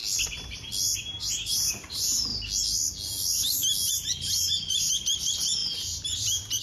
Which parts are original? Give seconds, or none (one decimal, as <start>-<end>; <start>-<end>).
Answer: 0.0-1.0; 2.3-3.9